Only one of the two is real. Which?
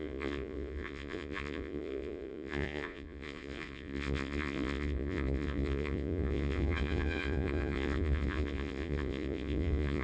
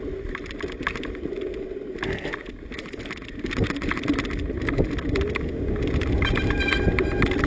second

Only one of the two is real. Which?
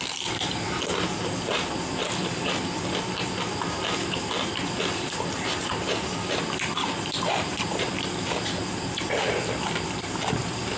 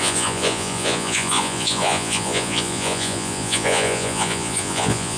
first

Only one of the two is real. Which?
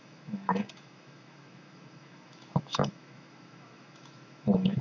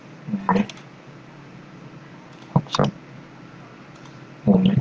second